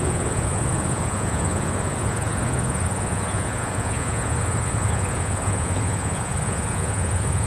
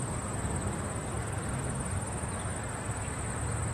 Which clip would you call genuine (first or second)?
second